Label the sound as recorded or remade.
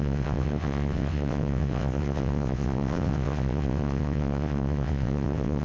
remade